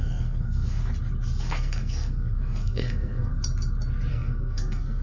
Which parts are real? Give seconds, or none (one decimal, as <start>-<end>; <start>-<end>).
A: 0.8-1.4; 3.3-4.1

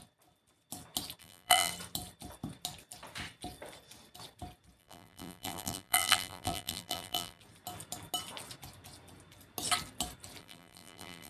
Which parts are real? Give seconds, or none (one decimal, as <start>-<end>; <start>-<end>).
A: 0.0-1.2; 1.7-4.8; 7.4-10.4

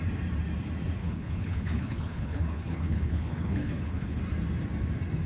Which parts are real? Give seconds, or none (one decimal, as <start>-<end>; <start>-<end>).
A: 0.0-1.0; 4.2-5.3

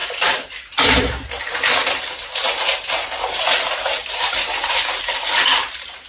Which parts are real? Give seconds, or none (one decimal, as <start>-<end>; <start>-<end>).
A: 2.3-6.1

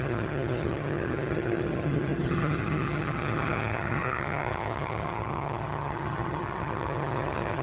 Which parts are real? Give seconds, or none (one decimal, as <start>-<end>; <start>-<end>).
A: none

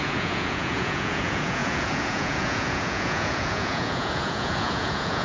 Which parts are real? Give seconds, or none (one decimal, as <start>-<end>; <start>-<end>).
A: none

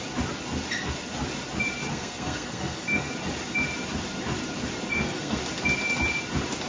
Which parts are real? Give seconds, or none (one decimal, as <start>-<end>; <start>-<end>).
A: 0.0-1.9; 3.1-4.9; 5.4-6.7